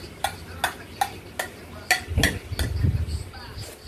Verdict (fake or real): real